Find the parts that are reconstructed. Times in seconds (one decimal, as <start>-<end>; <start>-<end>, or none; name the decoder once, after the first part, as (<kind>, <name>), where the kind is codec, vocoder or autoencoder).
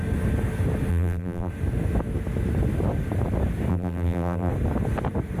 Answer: 0.9-1.5 (vocoder, BigVGAN v2); 3.7-4.5